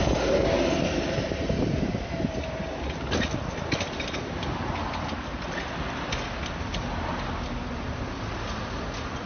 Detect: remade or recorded recorded